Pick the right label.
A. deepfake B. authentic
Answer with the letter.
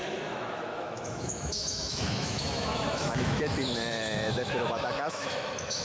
A